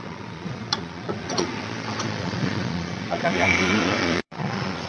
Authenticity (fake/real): fake